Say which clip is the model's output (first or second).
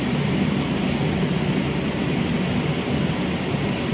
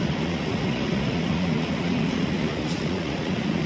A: second